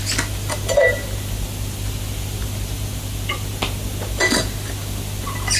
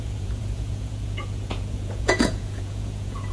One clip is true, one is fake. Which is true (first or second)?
first